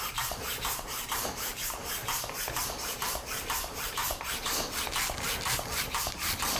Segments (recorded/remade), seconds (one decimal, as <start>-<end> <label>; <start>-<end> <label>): 0.0-2.0 remade; 2.0-2.6 recorded; 2.6-4.0 remade; 4.0-6.0 recorded; 6.0-6.6 remade